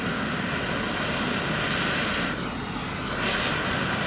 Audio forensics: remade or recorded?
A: recorded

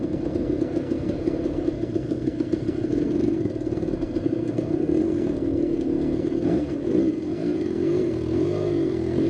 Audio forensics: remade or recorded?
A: remade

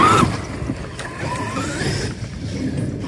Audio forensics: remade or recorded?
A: recorded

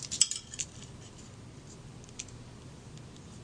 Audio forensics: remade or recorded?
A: recorded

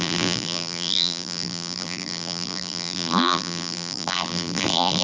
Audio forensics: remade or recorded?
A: remade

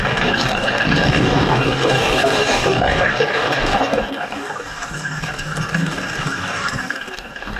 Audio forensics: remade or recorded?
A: remade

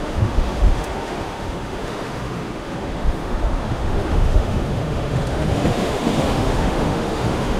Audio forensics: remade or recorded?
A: remade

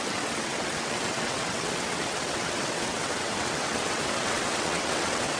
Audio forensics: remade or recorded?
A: remade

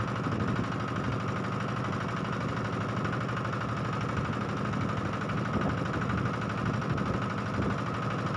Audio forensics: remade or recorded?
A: recorded